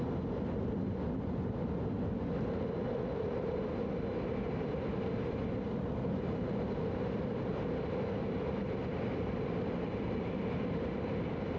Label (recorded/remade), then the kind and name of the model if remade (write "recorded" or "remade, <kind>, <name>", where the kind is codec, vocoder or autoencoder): recorded